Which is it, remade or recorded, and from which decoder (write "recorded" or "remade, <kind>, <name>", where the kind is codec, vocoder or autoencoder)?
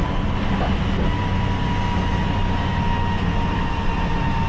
recorded